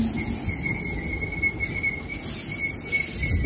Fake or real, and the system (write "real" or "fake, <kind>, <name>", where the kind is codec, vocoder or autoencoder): real